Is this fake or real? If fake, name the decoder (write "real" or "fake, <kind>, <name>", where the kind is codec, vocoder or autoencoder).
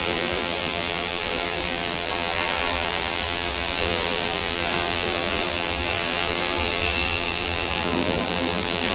fake, vocoder, BigVGAN v2